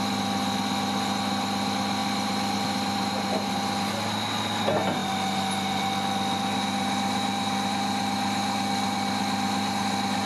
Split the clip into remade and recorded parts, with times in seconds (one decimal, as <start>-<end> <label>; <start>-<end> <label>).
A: 0.0-10.3 recorded